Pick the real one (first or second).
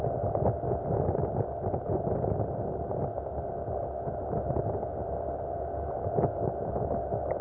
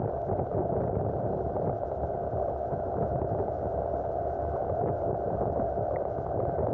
first